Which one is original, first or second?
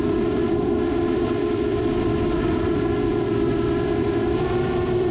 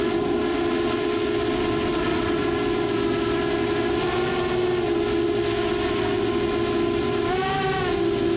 second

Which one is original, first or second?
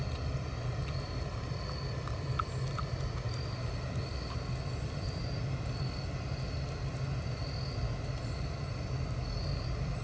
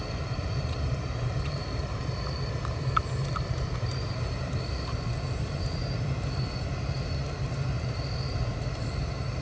first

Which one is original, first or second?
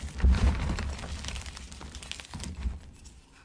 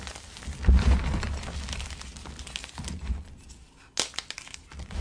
second